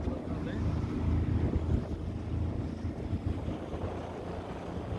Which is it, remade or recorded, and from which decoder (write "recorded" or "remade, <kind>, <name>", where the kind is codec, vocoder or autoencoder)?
recorded